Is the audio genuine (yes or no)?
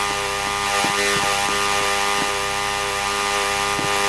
yes